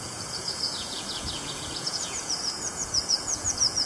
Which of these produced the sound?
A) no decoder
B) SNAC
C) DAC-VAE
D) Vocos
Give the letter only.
D